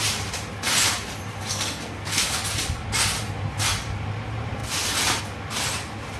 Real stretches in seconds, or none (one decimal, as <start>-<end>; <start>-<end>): 0.0-1.5; 2.4-6.2